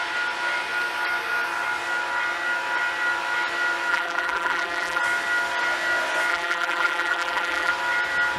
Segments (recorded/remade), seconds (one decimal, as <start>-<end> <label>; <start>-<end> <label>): 0.0-3.9 recorded; 3.9-5.0 remade; 5.0-6.3 recorded; 6.3-7.7 remade; 7.7-8.4 recorded